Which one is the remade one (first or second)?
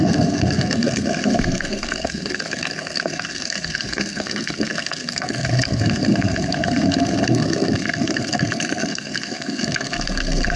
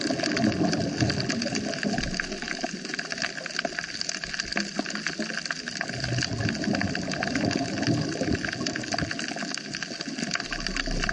first